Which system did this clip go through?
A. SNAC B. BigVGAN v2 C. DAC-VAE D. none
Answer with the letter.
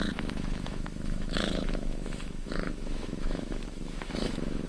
C